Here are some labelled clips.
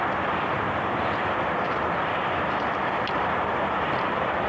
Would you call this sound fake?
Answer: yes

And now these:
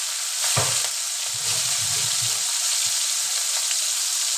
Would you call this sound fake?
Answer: no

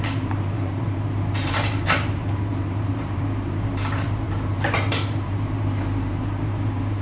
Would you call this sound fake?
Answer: yes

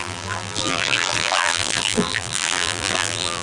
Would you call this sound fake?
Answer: yes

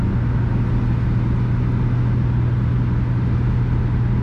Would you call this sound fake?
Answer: no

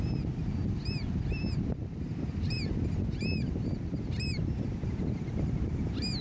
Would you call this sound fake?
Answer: no